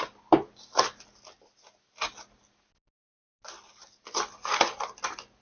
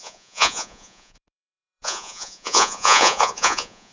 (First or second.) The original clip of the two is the first